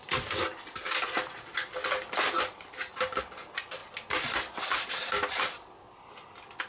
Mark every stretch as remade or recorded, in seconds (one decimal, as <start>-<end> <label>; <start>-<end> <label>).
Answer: 0.0-6.7 recorded

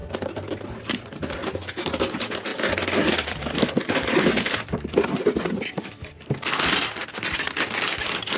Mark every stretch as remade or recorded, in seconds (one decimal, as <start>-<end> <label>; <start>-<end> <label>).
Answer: 0.0-1.2 remade; 1.2-2.5 recorded; 2.5-6.2 remade; 6.2-8.4 recorded